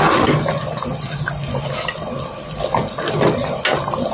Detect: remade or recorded recorded